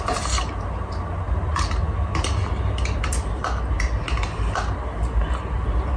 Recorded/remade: recorded